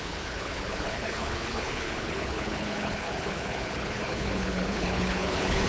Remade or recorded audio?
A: remade